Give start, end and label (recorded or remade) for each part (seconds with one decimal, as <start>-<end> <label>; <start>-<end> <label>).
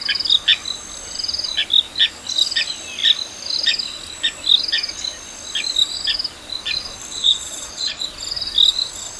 0.0-7.1 recorded; 7.1-8.0 remade; 8.0-9.2 recorded